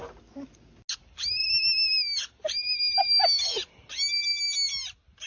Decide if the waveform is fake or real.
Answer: real